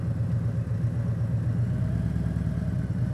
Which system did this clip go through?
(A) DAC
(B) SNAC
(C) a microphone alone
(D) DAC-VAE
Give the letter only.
C